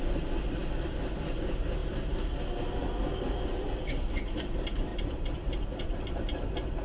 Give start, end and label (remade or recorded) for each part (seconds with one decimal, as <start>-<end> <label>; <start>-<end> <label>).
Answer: 0.0-4.9 recorded; 4.9-6.2 remade; 6.2-6.8 recorded